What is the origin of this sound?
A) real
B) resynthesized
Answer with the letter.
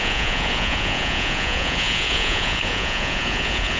B